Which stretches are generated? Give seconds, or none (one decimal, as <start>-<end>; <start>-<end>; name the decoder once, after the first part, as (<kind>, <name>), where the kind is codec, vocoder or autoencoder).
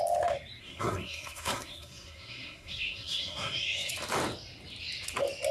0.6-3.9 (codec, SNAC)